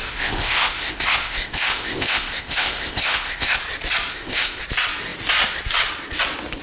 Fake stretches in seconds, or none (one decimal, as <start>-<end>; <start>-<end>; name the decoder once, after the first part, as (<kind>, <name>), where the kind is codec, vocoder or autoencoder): 0.0-3.6 (codec, ZipCodec); 4.1-4.6